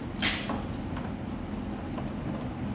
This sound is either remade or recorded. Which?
recorded